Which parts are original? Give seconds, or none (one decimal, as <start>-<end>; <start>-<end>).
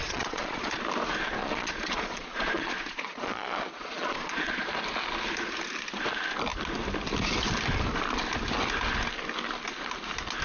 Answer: 0.8-1.4; 4.7-10.4